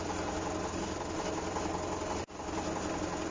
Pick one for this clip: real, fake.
real